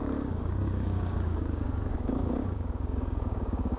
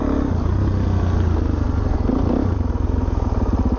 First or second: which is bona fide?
second